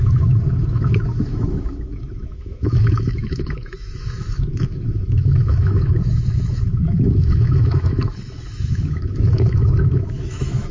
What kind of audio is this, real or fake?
fake